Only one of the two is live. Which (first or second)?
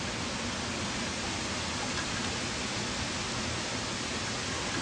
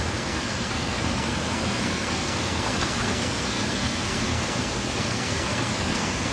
first